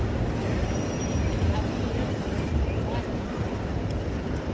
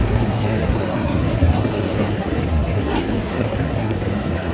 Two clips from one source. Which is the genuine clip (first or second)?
first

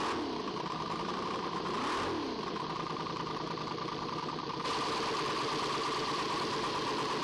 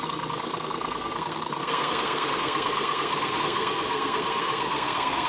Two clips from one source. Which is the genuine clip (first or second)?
first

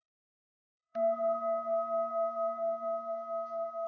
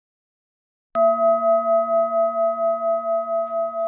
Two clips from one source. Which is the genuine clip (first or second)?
second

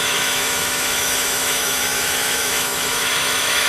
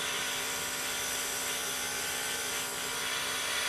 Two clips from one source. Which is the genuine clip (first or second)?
second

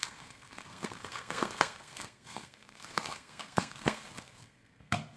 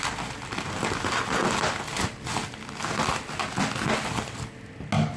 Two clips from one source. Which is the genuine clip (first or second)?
second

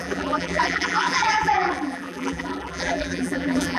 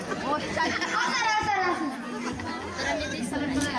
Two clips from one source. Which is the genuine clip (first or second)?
second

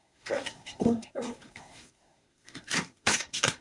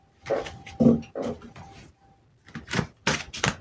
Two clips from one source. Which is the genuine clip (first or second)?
second